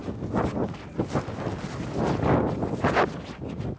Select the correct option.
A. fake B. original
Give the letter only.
B